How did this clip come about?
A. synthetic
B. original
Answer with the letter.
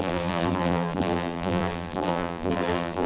A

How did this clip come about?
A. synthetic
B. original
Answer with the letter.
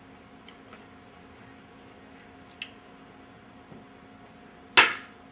B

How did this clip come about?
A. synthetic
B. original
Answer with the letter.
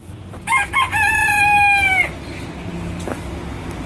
B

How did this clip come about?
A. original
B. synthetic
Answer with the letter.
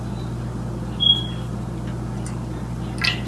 A